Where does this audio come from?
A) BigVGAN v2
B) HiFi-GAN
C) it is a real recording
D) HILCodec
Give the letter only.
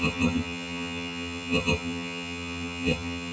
B